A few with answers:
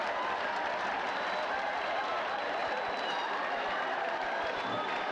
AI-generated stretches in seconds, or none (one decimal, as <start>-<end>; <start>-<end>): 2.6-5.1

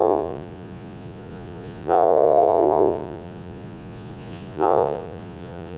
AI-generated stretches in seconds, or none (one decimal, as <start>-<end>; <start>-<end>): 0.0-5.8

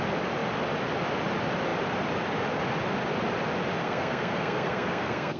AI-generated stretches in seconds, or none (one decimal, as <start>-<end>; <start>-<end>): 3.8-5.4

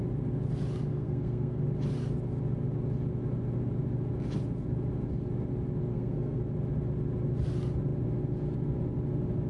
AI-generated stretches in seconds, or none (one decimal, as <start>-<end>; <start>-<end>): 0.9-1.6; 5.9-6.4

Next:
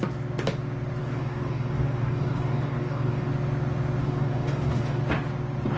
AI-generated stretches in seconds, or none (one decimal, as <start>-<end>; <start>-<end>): 1.0-3.3; 4.0-5.0